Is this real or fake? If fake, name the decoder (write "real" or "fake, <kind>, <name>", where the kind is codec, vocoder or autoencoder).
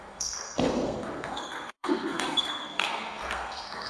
fake, codec, SNAC